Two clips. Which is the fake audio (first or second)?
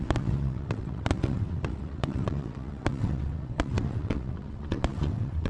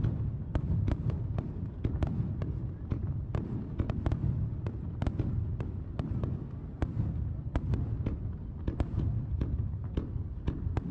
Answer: first